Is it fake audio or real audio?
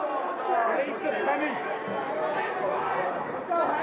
real